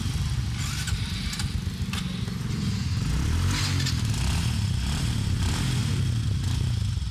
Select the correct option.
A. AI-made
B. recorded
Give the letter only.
B